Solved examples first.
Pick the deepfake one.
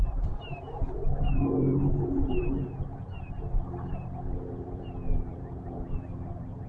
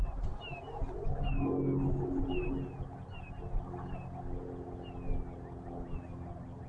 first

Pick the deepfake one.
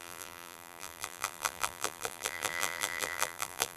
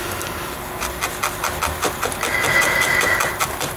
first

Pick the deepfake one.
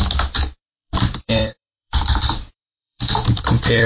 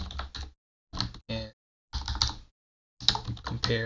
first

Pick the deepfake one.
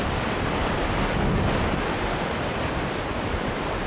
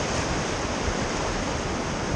second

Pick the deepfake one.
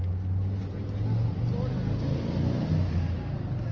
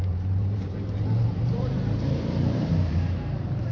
second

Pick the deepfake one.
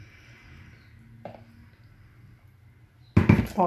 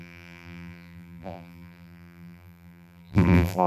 second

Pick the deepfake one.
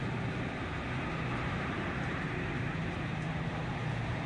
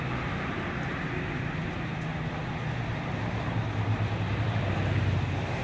first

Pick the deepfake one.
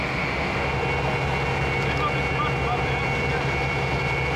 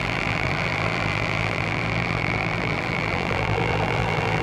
second